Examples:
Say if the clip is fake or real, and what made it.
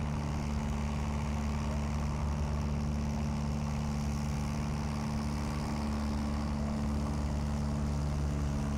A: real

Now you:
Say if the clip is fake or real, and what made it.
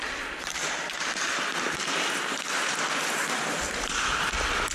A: real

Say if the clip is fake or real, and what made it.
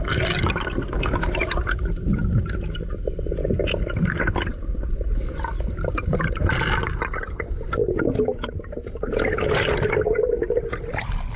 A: real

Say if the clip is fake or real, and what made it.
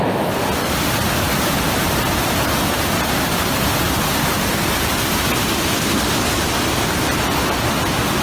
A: real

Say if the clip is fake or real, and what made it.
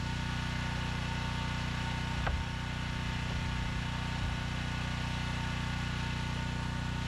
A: real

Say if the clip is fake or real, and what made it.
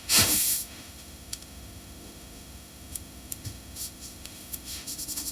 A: fake, autoencoder, DAC-VAE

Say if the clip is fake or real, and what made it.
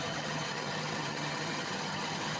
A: fake, vocoder, HiFi-GAN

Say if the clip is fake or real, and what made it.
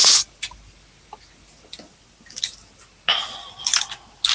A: real